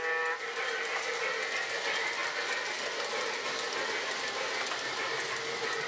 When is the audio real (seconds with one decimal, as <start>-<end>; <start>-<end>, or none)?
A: 0.0-5.9